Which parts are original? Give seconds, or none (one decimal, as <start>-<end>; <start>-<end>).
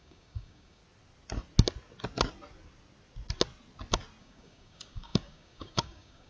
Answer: 0.8-4.2